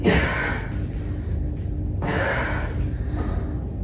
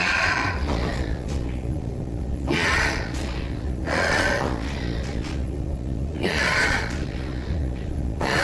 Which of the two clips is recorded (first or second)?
first